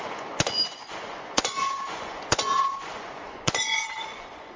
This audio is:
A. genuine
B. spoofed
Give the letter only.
B